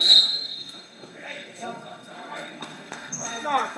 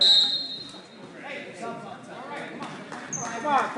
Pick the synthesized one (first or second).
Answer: first